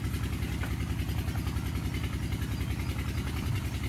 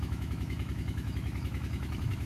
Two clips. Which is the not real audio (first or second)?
second